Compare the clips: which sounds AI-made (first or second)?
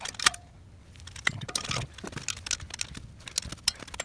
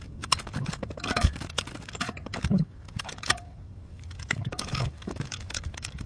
second